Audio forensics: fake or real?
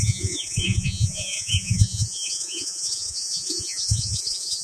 fake